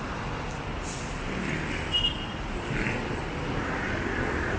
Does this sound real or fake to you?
real